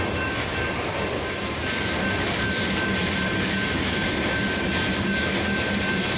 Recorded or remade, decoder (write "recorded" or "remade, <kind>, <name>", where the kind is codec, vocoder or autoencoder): remade, vocoder, BigVGAN v2